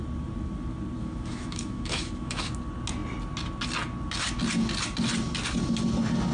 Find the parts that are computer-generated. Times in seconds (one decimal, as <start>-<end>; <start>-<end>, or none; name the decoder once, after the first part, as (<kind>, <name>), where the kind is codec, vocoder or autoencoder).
1.0-2.5 (autoencoder, DAC-VAE)